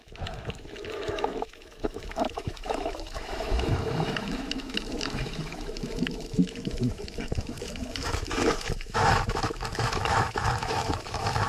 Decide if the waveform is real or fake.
fake